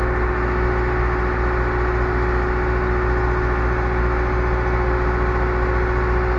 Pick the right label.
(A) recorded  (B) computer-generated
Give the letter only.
A